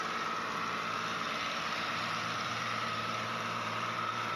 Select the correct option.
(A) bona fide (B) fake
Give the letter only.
B